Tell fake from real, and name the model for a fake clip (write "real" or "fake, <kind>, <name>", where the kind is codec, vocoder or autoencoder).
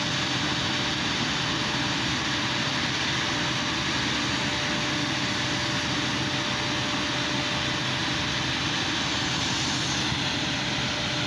real